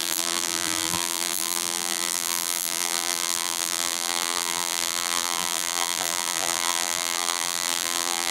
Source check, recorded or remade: remade